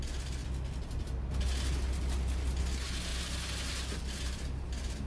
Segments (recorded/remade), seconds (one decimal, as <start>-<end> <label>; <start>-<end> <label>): 0.0-5.1 recorded